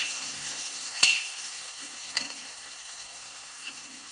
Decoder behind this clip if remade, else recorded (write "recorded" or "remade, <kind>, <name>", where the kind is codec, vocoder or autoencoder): remade, codec, SNAC